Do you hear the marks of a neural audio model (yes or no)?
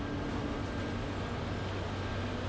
no